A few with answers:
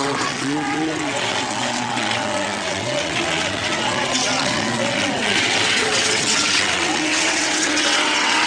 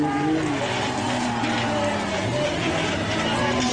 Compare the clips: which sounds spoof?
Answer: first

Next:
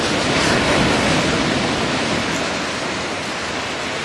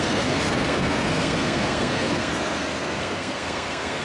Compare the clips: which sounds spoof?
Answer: second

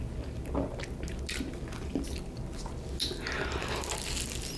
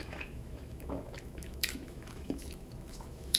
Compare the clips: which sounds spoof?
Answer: second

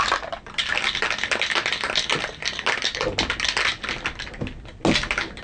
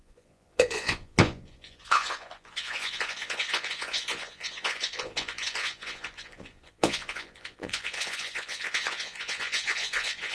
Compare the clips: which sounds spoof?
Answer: second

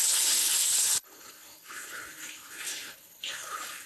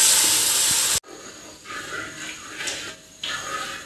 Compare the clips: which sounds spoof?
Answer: first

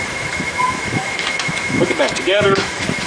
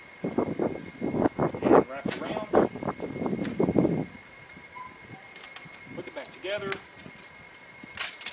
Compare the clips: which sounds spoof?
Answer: first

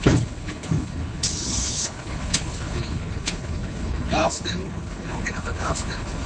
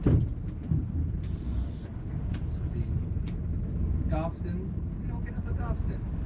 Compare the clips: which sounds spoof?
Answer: first